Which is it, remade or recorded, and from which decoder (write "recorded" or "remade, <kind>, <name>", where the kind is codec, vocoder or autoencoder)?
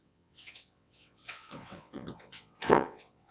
remade, vocoder, WaveNeXt